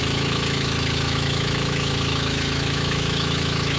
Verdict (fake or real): fake